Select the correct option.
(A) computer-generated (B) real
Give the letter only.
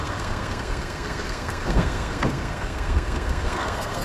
A